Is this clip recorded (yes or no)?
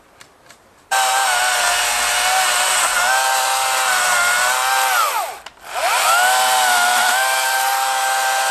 yes